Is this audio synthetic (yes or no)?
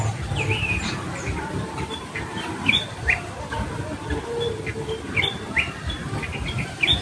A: yes